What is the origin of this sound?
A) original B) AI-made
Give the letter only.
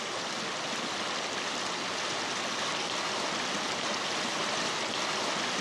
A